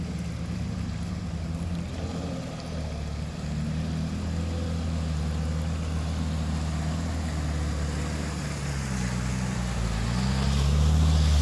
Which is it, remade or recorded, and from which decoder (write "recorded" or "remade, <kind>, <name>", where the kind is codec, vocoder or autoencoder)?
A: recorded